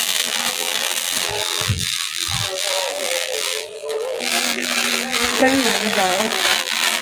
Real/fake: fake